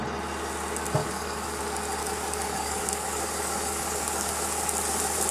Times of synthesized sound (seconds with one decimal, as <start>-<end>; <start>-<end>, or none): 1.0-1.6; 2.0-4.3

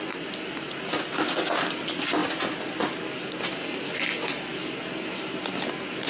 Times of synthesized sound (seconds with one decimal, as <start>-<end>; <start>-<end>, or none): none